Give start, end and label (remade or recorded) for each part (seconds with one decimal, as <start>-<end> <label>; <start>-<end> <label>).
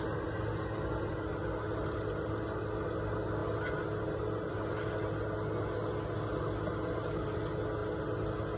0.0-8.6 recorded